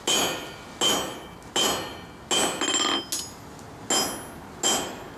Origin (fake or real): real